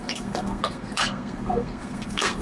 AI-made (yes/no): yes